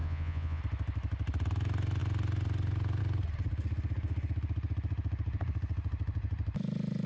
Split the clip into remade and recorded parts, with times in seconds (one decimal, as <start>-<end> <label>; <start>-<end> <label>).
0.0-0.6 remade; 0.6-7.1 recorded